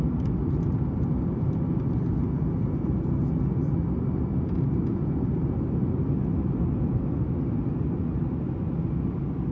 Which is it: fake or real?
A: real